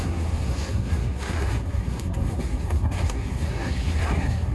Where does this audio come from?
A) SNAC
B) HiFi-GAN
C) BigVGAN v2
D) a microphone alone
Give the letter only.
A